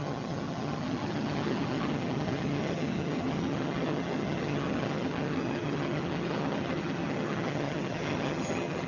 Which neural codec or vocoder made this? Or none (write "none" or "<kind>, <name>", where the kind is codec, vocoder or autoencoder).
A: vocoder, HiFi-GAN